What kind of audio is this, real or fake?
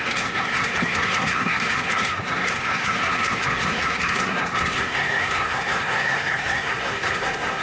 fake